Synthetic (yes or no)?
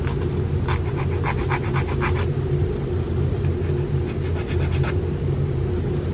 no